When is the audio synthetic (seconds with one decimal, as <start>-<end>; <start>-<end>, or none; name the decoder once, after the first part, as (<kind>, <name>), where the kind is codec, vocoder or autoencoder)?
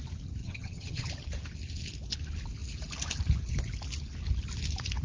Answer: 0.4-1.1 (vocoder, HiFi-GAN)